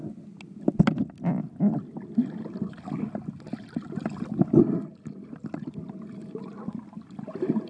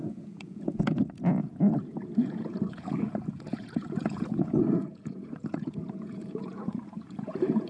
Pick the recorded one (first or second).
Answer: first